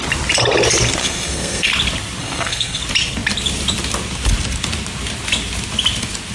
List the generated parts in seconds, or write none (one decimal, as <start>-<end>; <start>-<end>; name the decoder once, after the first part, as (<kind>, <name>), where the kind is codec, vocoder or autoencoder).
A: 1.0-1.7 (codec, SNAC); 2.2-2.8